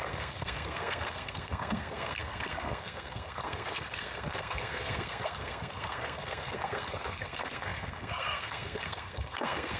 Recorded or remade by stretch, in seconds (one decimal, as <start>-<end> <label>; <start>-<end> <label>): 0.0-9.8 remade